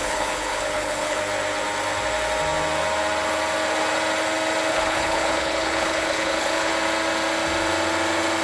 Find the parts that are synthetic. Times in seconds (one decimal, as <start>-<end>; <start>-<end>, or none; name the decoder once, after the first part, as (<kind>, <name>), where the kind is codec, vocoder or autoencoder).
0.0-1.2 (codec, HILCodec); 4.7-6.7